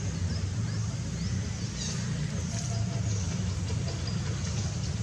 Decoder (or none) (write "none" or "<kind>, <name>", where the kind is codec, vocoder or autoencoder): none